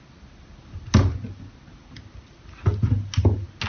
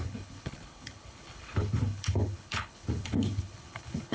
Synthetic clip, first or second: second